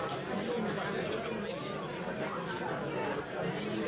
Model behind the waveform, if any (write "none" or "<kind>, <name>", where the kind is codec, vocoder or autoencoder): none